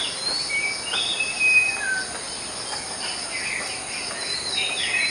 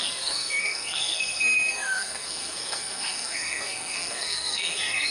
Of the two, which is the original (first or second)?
first